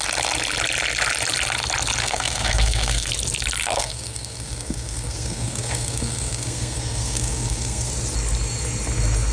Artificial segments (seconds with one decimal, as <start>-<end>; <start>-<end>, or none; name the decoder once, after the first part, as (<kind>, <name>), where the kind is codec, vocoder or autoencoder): 2.0-3.1 (codec, SNAC); 3.6-7.9